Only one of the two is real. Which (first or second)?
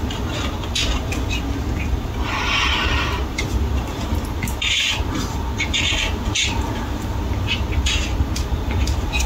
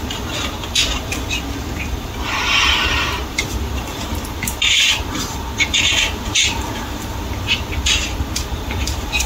first